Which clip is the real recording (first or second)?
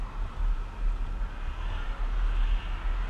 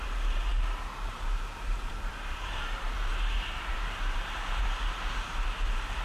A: first